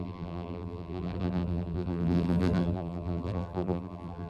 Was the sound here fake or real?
fake